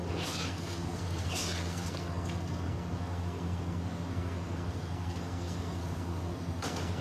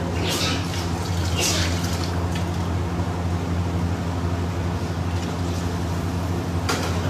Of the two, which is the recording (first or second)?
second